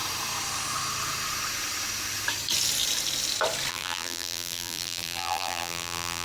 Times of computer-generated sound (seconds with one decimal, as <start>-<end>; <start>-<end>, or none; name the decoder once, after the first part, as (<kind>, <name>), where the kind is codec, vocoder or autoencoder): 3.7-6.2 (vocoder, BigVGAN v2)